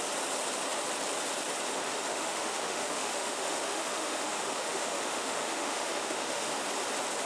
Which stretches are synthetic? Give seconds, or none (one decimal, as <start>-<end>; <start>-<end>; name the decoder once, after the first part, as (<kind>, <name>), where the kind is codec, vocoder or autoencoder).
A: 2.1-6.5 (autoencoder, DAC-VAE)